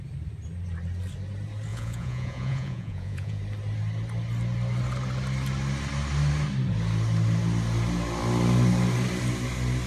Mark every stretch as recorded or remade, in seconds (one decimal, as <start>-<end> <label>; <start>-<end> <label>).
0.0-1.7 recorded; 1.7-3.4 remade; 3.4-9.9 recorded